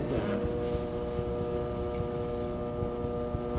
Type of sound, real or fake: real